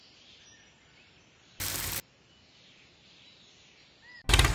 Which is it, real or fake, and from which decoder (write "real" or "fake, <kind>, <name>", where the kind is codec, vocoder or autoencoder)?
real